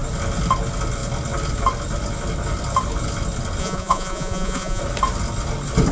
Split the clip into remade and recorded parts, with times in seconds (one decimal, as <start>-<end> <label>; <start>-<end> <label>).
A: 0.0-3.6 recorded; 3.6-4.8 remade; 4.8-5.9 recorded